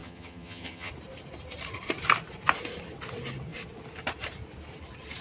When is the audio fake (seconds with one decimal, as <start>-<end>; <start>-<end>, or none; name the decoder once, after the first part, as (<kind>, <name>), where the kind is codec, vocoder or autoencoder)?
0.0-0.9 (vocoder, HiFi-GAN)